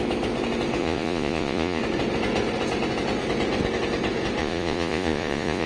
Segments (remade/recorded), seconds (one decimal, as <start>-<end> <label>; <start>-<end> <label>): 0.0-0.8 recorded; 0.8-1.8 remade; 1.8-4.4 recorded; 4.4-5.7 remade